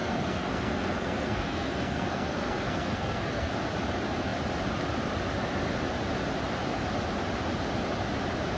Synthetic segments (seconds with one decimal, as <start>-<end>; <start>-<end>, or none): 0.0-3.5

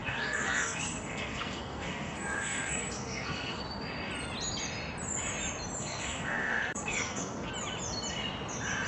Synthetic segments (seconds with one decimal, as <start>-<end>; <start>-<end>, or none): 0.0-3.6; 5.8-7.5

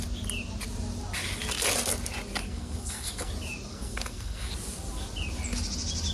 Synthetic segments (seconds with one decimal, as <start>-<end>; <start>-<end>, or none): 2.4-3.3; 3.7-4.5